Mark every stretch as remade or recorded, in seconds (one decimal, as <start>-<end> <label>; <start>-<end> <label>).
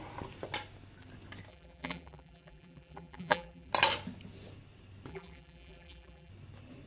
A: 0.0-1.5 recorded; 1.5-3.7 remade; 3.7-5.1 recorded; 5.1-6.3 remade; 6.3-6.9 recorded